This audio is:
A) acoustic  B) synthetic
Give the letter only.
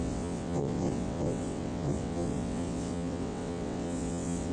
B